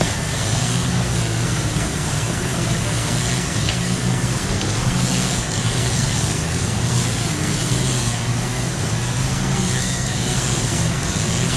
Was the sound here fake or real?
fake